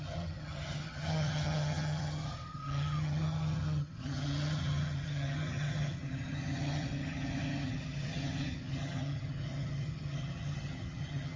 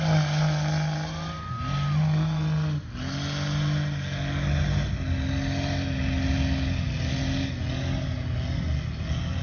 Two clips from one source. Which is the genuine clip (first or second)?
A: second